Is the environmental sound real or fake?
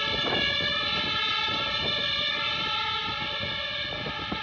real